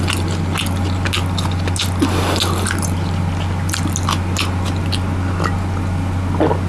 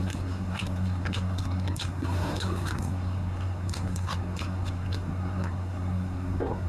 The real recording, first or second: first